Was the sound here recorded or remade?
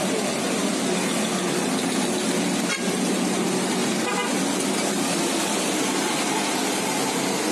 recorded